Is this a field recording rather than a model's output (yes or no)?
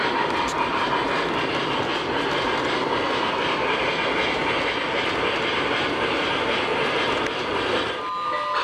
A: yes